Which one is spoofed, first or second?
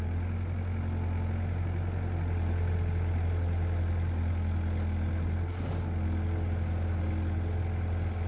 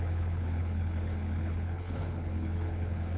second